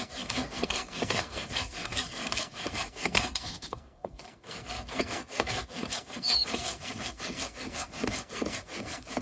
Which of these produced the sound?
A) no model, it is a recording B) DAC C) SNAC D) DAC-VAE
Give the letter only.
C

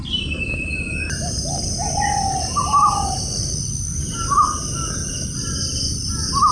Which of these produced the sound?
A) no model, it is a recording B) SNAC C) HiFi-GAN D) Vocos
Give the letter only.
A